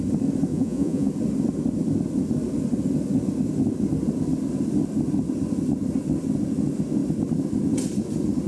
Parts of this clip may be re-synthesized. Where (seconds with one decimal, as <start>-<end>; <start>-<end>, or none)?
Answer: 0.5-1.1